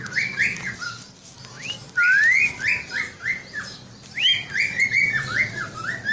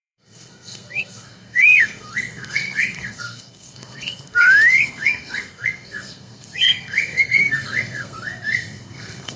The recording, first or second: first